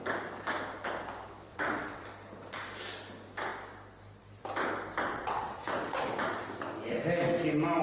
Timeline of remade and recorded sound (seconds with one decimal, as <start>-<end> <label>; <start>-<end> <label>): 0.0-1.5 recorded; 1.5-2.1 remade; 2.1-5.1 recorded; 5.1-6.2 remade; 6.2-7.8 recorded